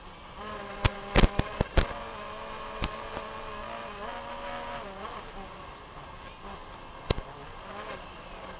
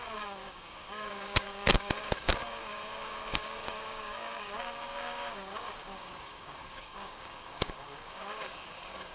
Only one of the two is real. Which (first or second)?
first